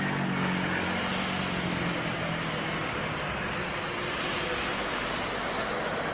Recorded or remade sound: recorded